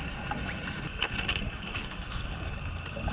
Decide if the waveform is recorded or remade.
recorded